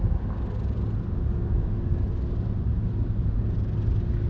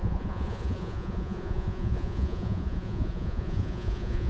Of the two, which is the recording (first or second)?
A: first